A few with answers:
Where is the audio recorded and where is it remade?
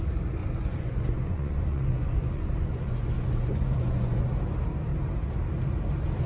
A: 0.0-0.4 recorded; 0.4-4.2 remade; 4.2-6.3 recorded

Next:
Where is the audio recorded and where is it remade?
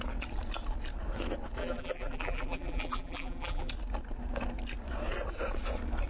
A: 0.0-1.6 recorded; 1.6-3.7 remade; 3.7-6.1 recorded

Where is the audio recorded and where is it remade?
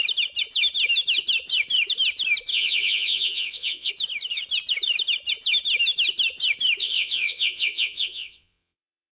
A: 0.0-2.5 recorded; 2.5-3.9 remade; 3.9-6.8 recorded; 6.8-9.1 remade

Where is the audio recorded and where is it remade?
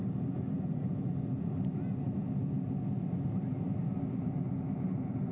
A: 0.0-5.3 recorded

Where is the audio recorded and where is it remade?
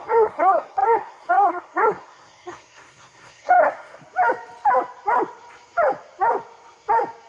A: 0.0-4.0 remade; 4.0-7.3 recorded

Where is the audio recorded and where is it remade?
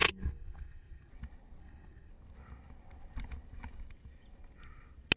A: 0.0-1.1 remade; 1.1-1.6 recorded; 1.6-2.1 remade; 2.1-5.2 recorded